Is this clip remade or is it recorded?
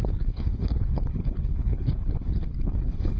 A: remade